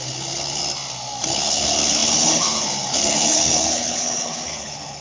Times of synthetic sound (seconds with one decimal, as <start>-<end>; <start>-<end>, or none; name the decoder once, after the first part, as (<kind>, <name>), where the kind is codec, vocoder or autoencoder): 0.0-0.6 (codec, HILCodec); 1.2-5.0